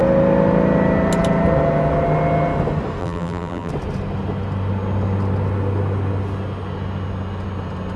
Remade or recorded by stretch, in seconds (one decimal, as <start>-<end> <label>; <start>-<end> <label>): 0.0-3.0 recorded; 3.0-3.7 remade; 3.7-8.0 recorded